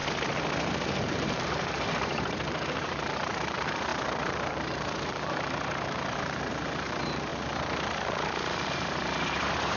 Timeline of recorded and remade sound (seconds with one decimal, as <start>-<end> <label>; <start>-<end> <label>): 0.0-1.1 recorded; 1.1-9.8 remade